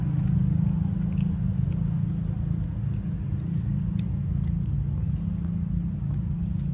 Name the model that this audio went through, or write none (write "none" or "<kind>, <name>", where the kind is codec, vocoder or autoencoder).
none